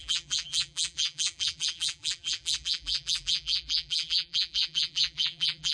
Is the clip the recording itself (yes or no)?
no